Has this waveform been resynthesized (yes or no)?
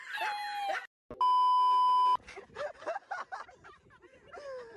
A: no